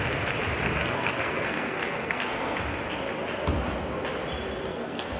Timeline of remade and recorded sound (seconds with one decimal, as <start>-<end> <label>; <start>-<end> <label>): 0.0-0.8 recorded; 0.8-2.6 remade; 2.6-4.7 recorded; 4.7-5.2 remade